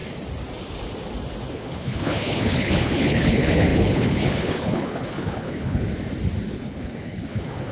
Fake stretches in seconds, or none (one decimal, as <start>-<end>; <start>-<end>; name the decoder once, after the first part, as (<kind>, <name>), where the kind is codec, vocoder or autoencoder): 1.5-5.9 (codec, HILCodec); 6.5-7.7